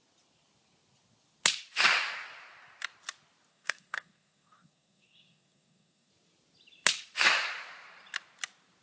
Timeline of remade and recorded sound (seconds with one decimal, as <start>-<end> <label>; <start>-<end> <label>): 0.0-3.5 recorded; 3.5-6.1 remade; 6.1-8.8 recorded